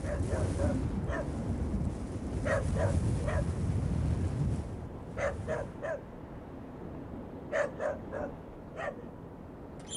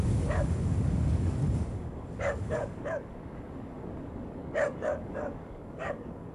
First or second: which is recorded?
first